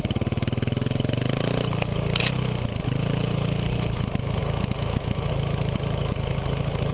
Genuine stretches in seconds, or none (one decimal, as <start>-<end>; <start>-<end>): 0.0-4.4; 5.3-6.9